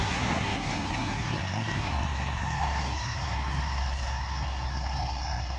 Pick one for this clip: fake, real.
fake